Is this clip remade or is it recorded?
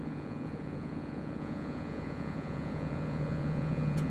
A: remade